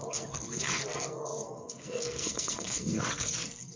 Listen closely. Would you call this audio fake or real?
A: fake